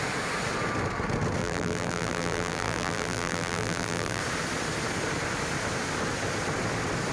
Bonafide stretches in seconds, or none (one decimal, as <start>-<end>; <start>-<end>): 0.0-1.4; 4.2-7.1